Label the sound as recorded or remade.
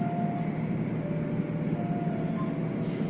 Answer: recorded